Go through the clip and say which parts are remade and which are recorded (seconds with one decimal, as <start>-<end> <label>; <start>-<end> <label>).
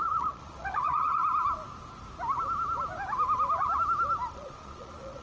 0.0-1.2 remade; 1.2-4.3 recorded; 4.3-5.2 remade